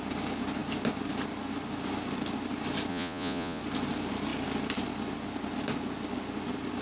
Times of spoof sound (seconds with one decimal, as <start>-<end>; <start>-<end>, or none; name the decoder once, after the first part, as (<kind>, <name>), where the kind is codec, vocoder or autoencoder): 2.9-3.6 (vocoder, Vocos)